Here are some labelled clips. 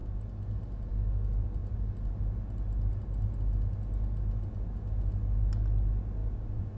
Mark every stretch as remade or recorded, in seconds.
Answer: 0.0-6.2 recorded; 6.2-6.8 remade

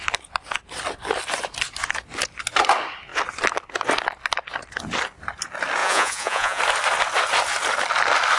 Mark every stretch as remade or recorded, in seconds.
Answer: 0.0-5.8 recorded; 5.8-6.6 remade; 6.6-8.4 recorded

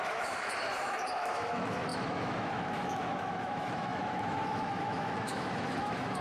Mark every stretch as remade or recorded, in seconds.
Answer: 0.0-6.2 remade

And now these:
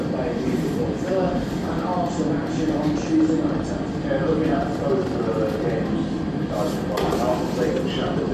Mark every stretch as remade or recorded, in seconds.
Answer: 0.0-2.4 remade; 2.4-7.1 recorded; 7.1-8.3 remade

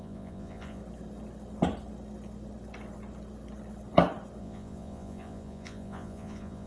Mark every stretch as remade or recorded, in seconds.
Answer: 0.0-0.8 remade; 0.8-4.4 recorded; 4.4-6.7 remade

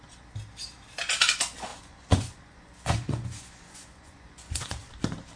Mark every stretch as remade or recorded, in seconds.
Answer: 0.0-1.7 recorded; 1.7-4.9 remade; 4.9-5.4 recorded

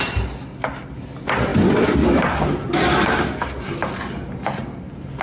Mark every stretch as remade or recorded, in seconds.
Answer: 0.0-5.2 recorded